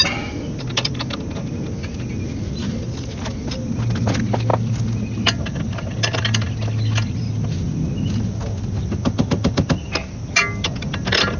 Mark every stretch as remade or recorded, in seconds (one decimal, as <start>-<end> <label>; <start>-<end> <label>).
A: 0.0-11.4 recorded

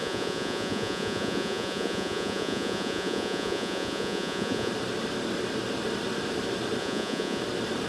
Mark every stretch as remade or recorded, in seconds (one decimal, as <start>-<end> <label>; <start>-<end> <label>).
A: 0.0-4.7 remade; 4.7-6.8 recorded; 6.8-7.4 remade; 7.4-7.9 recorded

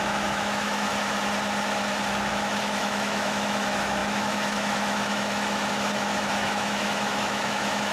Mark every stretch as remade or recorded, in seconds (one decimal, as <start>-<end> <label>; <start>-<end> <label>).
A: 0.0-0.9 remade; 0.9-2.3 recorded; 2.3-7.9 remade

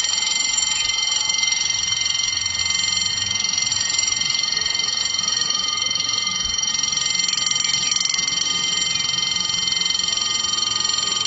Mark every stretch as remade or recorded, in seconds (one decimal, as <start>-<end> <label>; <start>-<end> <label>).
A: 0.0-2.6 remade; 2.6-3.1 recorded; 3.1-6.7 remade; 6.7-11.3 recorded

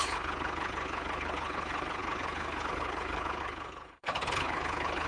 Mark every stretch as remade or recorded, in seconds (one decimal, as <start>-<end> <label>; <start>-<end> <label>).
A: 0.0-5.1 remade

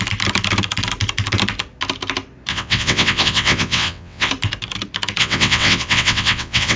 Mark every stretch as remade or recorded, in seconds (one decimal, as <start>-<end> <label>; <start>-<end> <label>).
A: 0.0-2.5 recorded; 2.5-4.3 remade; 4.3-5.2 recorded; 5.2-6.8 remade

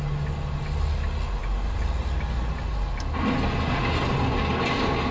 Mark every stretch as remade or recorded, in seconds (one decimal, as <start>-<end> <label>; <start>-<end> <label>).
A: 0.0-5.1 recorded